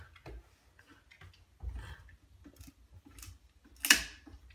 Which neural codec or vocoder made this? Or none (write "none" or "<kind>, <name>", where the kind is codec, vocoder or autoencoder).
none